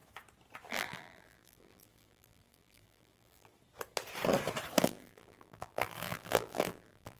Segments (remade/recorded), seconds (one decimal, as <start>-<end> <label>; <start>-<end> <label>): 0.0-0.7 recorded; 0.7-3.5 remade; 3.5-4.8 recorded; 4.8-7.2 remade